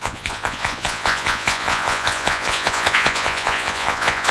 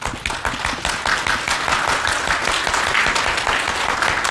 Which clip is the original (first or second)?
second